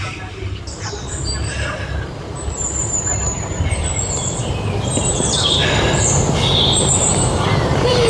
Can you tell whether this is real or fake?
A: fake